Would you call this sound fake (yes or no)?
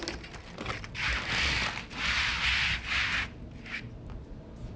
no